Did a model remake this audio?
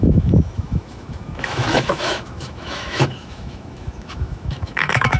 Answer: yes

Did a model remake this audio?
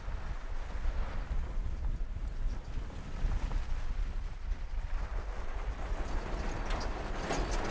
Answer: no